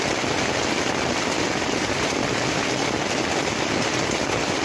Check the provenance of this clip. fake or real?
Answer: real